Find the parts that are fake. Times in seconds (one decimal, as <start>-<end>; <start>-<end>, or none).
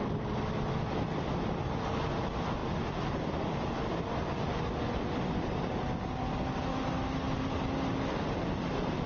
6.7-7.3